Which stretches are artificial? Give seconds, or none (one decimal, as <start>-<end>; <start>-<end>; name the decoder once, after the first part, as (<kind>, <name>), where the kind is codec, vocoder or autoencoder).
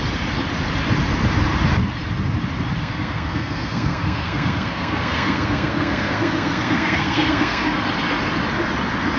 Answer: 2.8-7.8 (codec, SNAC)